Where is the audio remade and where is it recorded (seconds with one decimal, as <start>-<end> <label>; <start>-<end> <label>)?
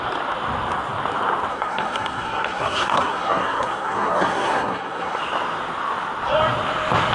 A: 0.0-1.5 recorded; 1.5-5.2 remade; 5.2-7.1 recorded